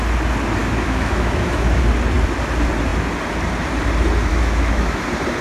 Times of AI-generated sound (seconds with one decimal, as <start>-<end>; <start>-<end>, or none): 0.6-1.8; 4.3-5.0